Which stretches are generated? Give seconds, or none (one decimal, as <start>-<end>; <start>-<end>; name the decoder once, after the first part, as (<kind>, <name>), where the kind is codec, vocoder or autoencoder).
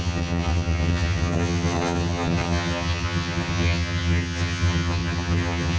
0.0-5.8 (vocoder, HiFi-GAN)